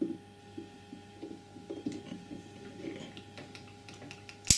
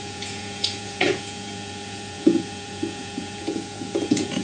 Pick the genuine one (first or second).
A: first